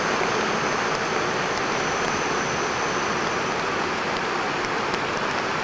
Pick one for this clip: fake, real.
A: real